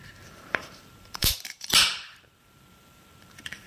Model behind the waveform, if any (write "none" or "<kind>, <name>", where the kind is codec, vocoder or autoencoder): vocoder, BigVGAN v2